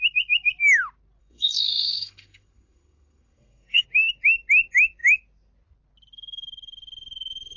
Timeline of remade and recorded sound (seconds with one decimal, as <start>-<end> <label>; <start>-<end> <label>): 0.0-1.2 recorded; 1.2-3.8 remade; 3.8-7.6 recorded